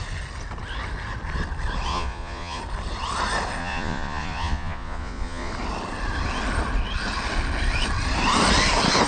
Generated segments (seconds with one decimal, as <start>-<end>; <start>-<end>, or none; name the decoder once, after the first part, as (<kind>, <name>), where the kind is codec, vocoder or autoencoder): 1.9-2.6 (vocoder, Vocos); 3.6-5.5